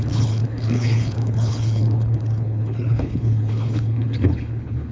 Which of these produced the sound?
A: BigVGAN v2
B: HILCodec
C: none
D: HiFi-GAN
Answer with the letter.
B